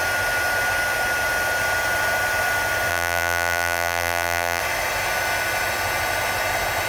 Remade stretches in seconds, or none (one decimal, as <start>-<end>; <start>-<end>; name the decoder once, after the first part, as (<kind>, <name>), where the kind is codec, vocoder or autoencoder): 2.9-4.6 (vocoder, BigVGAN v2)